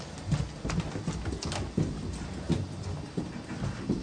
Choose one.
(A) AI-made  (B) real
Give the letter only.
B